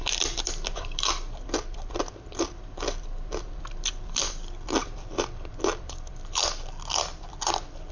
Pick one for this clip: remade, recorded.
remade